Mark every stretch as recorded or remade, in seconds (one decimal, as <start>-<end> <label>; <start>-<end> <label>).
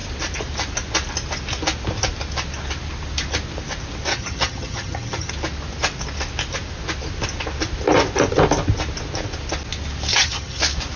0.0-4.1 recorded; 4.1-5.3 remade; 5.3-10.1 recorded; 10.1-10.6 remade; 10.6-11.0 recorded